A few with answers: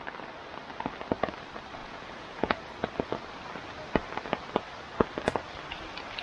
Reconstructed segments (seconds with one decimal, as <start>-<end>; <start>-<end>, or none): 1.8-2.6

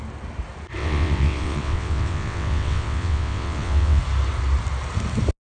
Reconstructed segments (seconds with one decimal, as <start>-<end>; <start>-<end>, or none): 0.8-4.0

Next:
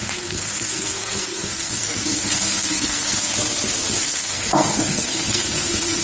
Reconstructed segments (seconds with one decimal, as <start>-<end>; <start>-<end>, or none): 0.0-3.3; 4.0-6.0